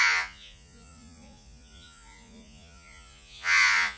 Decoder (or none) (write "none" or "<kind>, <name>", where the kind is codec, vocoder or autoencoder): vocoder, Vocos